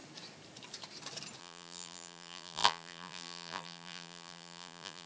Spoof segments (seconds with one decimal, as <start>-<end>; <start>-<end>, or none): 1.4-5.1